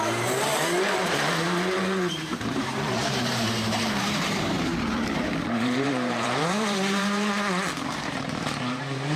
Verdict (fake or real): fake